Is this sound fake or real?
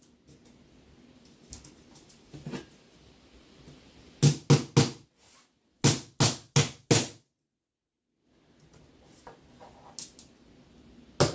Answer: real